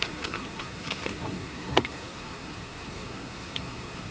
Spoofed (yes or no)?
yes